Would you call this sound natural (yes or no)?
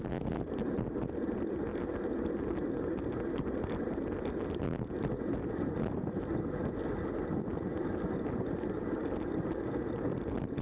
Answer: yes